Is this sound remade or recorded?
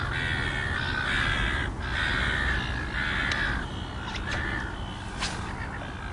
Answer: recorded